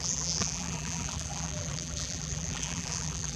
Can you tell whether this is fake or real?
fake